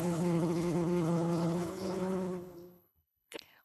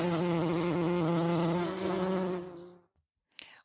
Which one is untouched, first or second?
second